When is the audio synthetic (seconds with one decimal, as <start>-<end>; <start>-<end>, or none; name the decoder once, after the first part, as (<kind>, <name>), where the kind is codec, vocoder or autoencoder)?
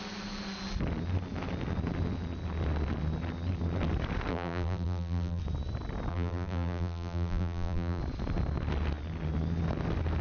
4.3-5.4 (vocoder, BigVGAN v2); 6.1-8.0